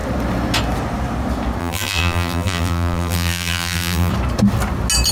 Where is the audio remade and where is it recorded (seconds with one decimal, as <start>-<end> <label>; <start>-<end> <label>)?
0.0-1.6 recorded; 1.6-4.1 remade; 4.1-5.1 recorded